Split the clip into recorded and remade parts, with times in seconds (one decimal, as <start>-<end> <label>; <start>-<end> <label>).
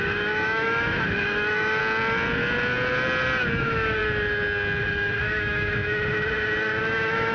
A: 0.0-1.8 remade; 1.8-3.6 recorded; 3.6-4.0 remade; 4.0-4.8 recorded; 4.8-7.3 remade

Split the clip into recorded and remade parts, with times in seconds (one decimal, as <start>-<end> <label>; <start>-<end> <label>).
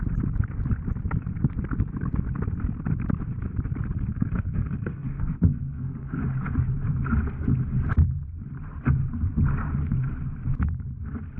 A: 0.0-4.1 recorded; 4.1-6.2 remade; 6.2-11.4 recorded